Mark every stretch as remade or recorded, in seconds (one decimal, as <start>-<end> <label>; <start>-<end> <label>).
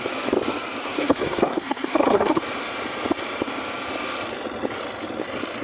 0.0-0.8 recorded; 0.8-2.4 remade; 2.4-5.6 recorded